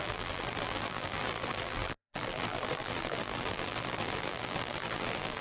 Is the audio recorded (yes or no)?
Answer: no